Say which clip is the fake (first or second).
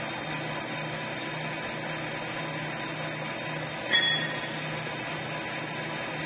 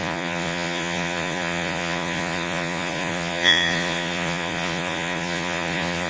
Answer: second